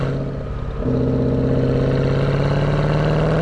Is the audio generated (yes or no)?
no